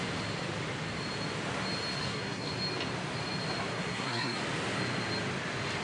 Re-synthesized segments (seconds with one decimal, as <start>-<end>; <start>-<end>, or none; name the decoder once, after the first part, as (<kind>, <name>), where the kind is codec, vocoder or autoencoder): 2.0-2.5 (codec, SNAC); 3.7-4.4

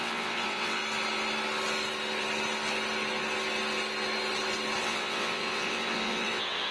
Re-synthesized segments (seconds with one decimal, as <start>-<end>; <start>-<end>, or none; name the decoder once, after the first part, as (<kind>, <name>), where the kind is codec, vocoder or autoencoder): 0.0-0.8 (vocoder, WaveNeXt); 4.8-6.7

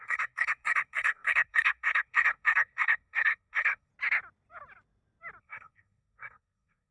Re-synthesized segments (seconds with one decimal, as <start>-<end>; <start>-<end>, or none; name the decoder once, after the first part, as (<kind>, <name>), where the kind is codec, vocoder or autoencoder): 0.0-3.9 (codec, SNAC); 5.4-6.9

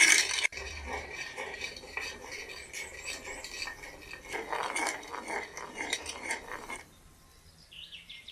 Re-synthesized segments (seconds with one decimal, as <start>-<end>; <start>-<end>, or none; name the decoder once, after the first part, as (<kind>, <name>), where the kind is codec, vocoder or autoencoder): 0.0-2.3 (vocoder, BigVGAN v2); 5.7-8.3

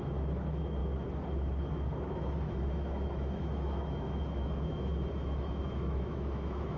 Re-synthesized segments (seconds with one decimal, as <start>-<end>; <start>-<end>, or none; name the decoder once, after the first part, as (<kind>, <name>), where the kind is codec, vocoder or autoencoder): 0.0-6.8 (autoencoder, DAC-VAE)

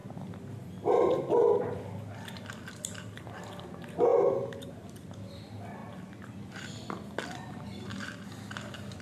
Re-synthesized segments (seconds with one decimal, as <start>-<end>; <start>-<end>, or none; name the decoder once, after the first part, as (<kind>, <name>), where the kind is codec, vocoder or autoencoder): none